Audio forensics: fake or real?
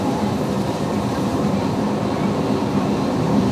fake